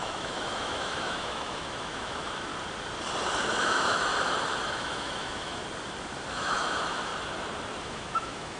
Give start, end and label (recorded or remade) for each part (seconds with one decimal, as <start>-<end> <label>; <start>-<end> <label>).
0.0-2.5 remade; 2.5-3.6 recorded; 3.6-4.1 remade; 4.1-4.7 recorded; 4.7-5.6 remade; 5.6-6.3 recorded; 6.3-7.1 remade; 7.1-7.8 recorded; 7.8-8.6 remade